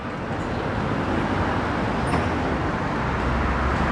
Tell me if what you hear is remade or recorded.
recorded